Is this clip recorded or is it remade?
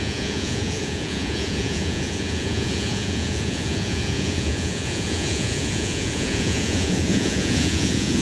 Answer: remade